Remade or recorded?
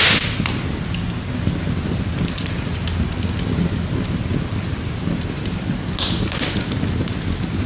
recorded